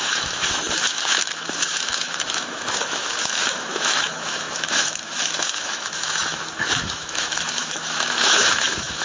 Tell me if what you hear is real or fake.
fake